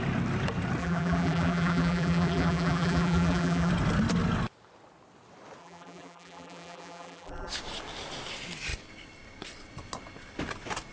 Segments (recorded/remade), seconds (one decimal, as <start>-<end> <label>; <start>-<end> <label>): 0.0-0.8 recorded; 0.8-3.7 remade; 3.7-5.6 recorded; 5.6-7.5 remade; 7.5-10.9 recorded